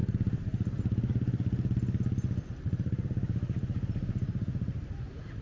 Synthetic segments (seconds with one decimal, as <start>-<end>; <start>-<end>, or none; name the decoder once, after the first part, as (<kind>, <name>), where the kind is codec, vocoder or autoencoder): none